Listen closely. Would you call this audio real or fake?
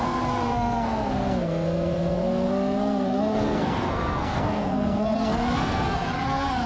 fake